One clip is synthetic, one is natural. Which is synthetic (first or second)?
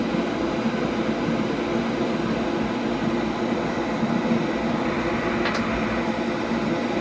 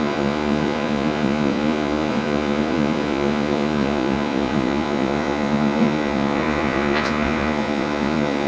second